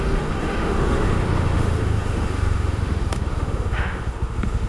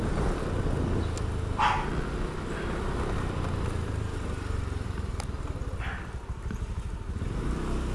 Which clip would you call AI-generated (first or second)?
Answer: first